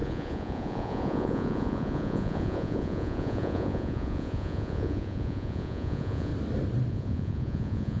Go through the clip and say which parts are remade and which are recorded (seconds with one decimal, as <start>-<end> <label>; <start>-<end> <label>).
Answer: 0.0-6.3 remade; 6.3-6.9 recorded; 6.9-8.0 remade